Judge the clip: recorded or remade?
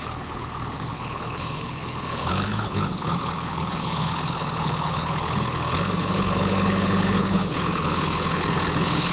remade